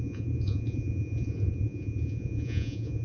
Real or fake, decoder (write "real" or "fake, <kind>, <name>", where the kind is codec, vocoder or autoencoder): fake, vocoder, Vocos